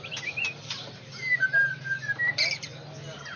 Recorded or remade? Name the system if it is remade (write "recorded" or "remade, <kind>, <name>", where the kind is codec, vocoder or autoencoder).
recorded